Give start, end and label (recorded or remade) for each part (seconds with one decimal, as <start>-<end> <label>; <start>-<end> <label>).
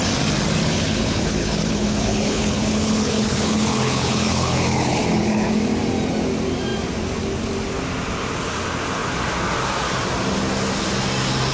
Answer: 0.0-0.6 recorded; 0.6-5.5 remade; 5.5-11.5 recorded